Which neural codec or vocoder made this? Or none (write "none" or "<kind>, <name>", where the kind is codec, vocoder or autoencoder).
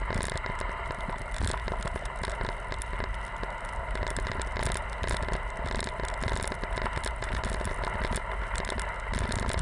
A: none